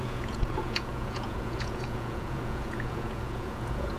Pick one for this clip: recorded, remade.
remade